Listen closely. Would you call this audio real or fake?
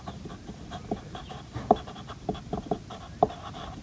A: real